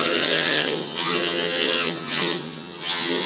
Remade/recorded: remade